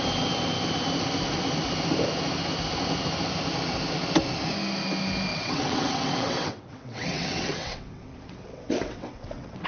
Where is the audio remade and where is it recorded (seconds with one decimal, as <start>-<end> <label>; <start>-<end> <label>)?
0.0-5.3 recorded; 5.3-9.7 remade